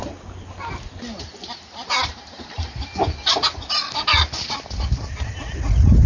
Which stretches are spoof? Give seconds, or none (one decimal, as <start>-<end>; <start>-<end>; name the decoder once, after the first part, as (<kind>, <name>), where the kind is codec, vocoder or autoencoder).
1.4-2.8 (vocoder, BigVGAN v2)

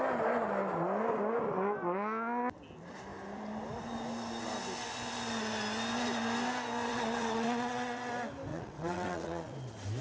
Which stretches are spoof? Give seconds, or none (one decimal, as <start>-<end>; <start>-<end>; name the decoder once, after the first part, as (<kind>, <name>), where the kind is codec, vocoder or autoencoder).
6.9-8.1 (vocoder, WaveNeXt); 8.5-9.5

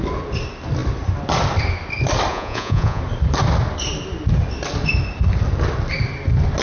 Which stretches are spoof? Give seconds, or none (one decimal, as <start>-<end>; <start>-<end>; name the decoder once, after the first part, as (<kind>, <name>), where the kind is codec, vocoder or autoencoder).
2.3-3.0 (vocoder, Vocos)

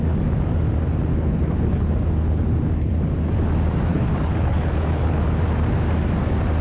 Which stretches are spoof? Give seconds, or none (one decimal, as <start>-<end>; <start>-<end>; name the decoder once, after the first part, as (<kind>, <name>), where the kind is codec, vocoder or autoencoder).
1.1-1.9 (codec, HILCodec); 3.9-5.2

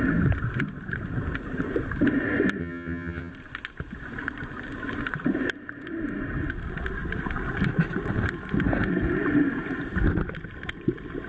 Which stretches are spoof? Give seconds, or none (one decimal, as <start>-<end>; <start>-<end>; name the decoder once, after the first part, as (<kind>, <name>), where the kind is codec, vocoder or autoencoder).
2.6-3.3 (vocoder, HiFi-GAN)

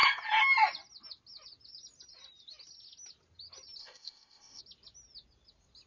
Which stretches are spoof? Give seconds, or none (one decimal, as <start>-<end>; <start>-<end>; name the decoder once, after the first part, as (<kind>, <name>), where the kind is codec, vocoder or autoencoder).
3.8-4.6 (codec, ZipCodec)

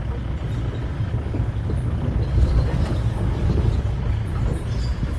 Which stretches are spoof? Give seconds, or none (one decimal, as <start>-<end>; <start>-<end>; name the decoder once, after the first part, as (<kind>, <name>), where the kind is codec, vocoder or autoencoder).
0.9-4.0 (codec, DAC)